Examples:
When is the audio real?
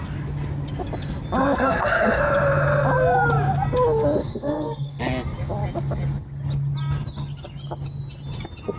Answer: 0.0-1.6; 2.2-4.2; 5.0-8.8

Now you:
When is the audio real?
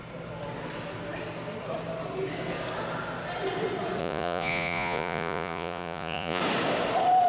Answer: 0.0-4.0; 6.4-7.3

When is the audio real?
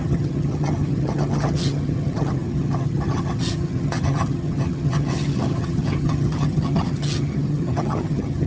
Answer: none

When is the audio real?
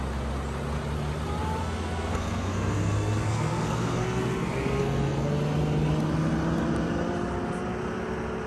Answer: 0.0-1.6; 5.3-8.5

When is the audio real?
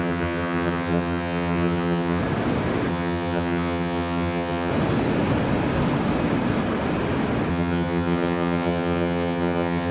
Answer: 2.2-2.9; 4.7-7.5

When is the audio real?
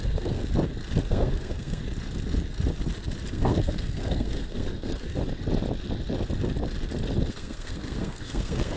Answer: 0.4-1.0; 1.8-3.3; 5.2-7.3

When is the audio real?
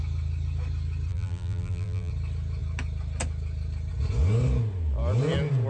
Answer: 0.0-1.1; 2.1-5.7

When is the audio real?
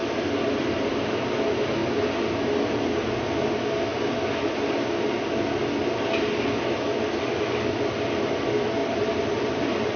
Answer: 1.1-1.8; 2.8-8.8